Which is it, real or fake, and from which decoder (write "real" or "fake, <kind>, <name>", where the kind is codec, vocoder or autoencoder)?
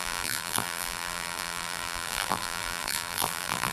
fake, vocoder, BigVGAN v2